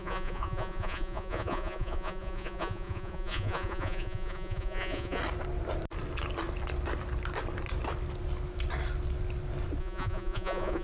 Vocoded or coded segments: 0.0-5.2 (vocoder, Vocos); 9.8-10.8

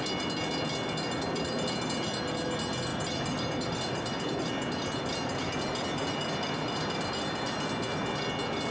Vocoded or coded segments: 2.9-4.4 (vocoder, BigVGAN v2)

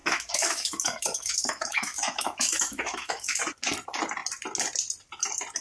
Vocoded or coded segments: 0.0-3.4 (autoencoder, DAC-VAE)

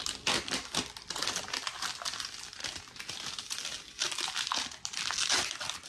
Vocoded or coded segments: none

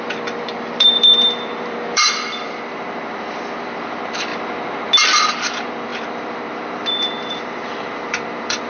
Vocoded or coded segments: 0.0-4.3 (vocoder, BigVGAN v2); 5.0-8.7

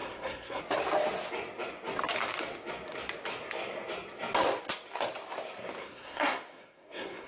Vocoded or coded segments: 0.0-0.6 (codec, SNAC); 5.8-7.3